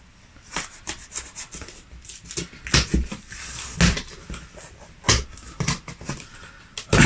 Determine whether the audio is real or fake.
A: real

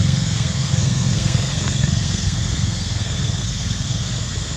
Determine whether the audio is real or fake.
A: fake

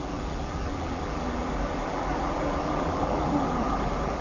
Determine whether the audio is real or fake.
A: fake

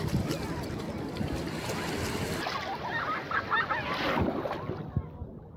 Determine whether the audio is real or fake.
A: real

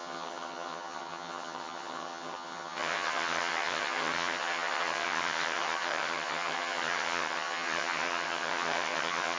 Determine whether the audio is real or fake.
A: fake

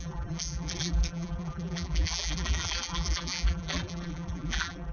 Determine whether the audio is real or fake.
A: fake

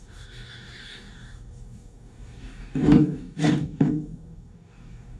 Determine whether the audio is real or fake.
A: fake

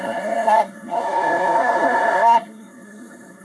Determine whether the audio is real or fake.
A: fake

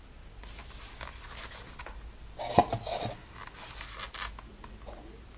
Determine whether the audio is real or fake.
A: real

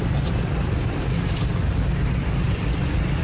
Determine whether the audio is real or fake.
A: real